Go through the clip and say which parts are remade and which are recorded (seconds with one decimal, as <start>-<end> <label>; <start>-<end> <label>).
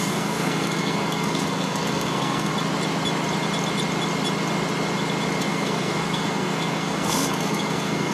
0.0-2.5 remade; 2.5-5.4 recorded; 5.4-8.1 remade